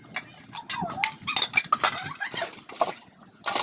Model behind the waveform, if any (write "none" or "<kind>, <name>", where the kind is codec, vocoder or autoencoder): none